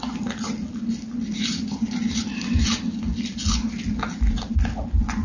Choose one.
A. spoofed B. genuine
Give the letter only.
B